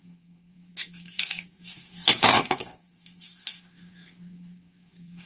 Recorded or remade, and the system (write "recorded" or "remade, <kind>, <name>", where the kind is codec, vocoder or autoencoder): remade, codec, DAC